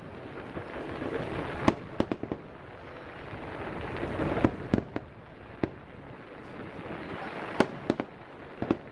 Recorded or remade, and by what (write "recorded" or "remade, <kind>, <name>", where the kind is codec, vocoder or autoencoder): recorded